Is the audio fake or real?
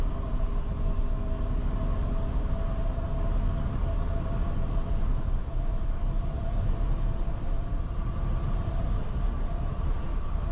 real